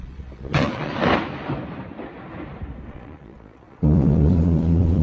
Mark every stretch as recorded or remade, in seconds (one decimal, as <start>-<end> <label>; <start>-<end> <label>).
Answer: 0.0-0.9 remade; 0.9-2.9 recorded; 2.9-5.0 remade